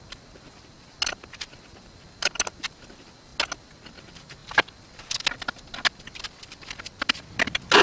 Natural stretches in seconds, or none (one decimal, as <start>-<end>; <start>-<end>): 0.0-7.8